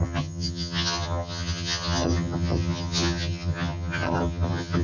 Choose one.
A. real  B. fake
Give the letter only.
B